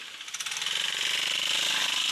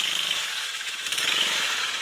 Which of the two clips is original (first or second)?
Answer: first